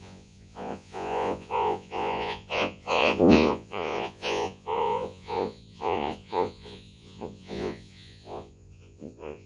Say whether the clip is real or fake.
fake